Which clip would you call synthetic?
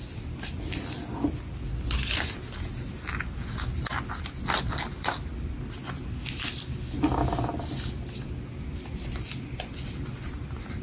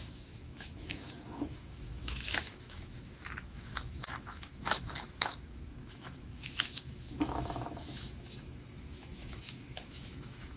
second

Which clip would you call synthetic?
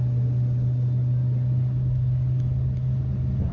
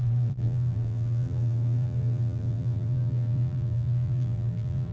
second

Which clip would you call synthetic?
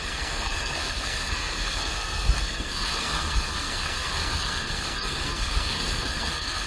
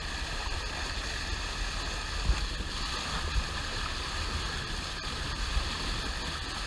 first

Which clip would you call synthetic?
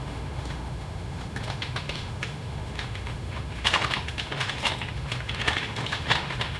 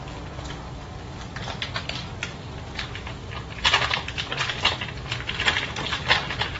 first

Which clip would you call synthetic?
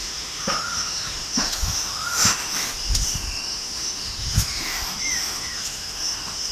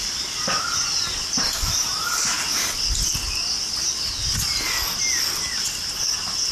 first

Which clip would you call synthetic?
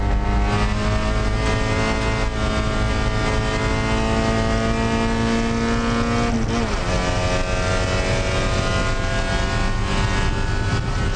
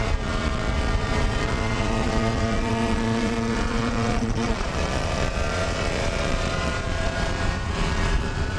second